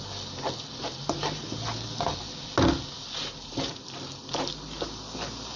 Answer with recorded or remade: recorded